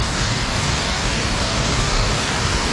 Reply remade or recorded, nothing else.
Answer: remade